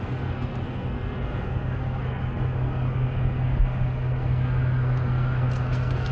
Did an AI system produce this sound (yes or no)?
yes